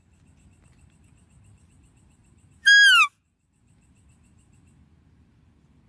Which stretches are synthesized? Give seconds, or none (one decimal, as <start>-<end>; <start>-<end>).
none